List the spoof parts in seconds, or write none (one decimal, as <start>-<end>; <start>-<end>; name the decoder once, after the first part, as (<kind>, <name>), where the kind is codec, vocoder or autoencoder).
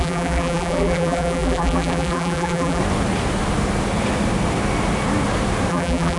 0.0-2.8 (vocoder, BigVGAN v2); 5.7-6.2